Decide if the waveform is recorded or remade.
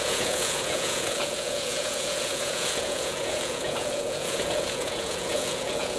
remade